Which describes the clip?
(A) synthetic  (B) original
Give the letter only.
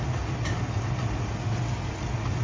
B